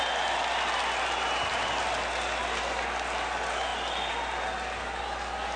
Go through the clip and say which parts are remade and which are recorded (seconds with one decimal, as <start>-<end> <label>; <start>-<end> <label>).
0.0-5.6 recorded